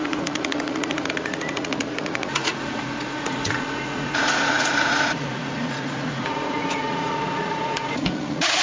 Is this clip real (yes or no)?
no